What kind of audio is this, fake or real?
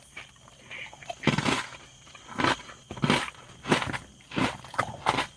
real